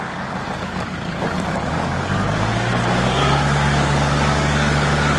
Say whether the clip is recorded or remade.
remade